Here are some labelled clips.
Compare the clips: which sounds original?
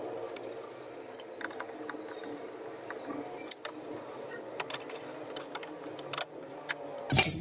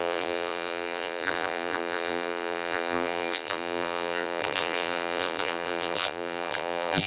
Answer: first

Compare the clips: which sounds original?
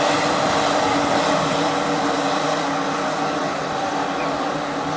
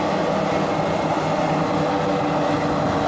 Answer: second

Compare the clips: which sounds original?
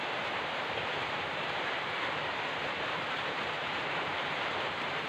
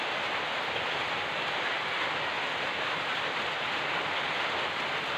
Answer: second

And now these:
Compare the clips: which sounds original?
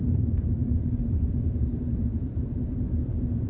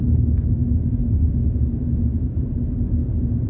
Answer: second